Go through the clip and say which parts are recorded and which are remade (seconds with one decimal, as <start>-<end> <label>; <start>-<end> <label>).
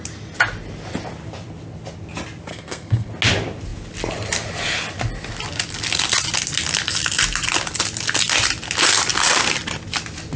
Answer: 0.0-2.5 recorded; 2.5-3.1 remade; 3.1-10.4 recorded